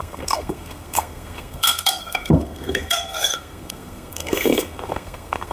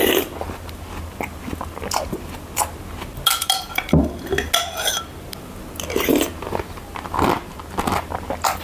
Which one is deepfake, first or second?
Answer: first